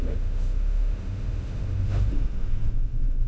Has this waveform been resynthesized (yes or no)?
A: yes